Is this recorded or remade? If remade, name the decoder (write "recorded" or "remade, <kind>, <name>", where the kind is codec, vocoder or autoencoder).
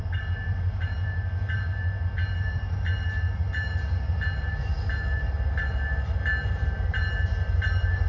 recorded